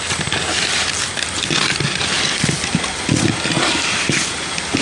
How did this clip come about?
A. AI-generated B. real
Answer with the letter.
B